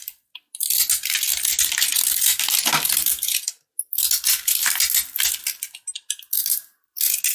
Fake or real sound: real